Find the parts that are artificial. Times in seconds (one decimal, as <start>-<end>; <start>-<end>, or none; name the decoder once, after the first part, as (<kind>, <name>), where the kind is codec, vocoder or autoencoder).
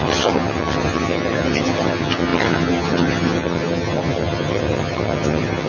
0.0-5.7 (vocoder, HiFi-GAN)